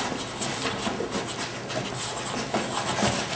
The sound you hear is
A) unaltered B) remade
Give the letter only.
A